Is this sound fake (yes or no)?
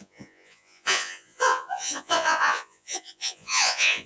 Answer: yes